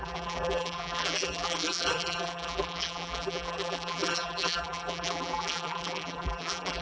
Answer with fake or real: fake